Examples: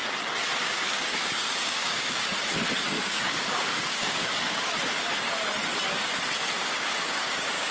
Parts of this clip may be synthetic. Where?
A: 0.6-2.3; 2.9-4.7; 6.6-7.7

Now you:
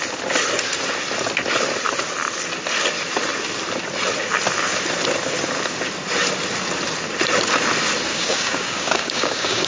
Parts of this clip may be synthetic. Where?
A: 8.1-9.7

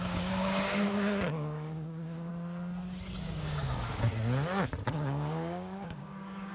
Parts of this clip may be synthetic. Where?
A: 0.0-2.3; 3.2-4.1; 4.9-6.5

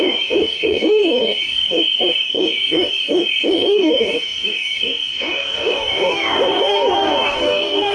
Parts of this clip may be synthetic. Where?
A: 0.0-7.9

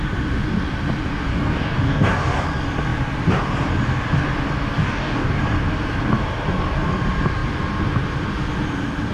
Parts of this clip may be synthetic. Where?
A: 1.3-2.4; 4.7-5.4

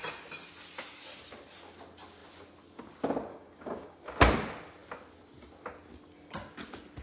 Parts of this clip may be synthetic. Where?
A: 3.3-4.0